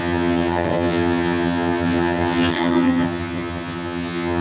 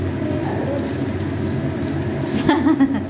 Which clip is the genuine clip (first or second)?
second